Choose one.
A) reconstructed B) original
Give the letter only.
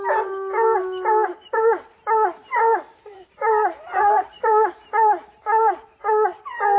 A